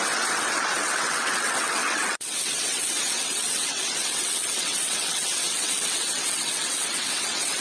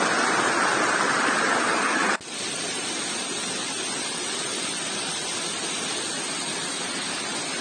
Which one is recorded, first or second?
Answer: second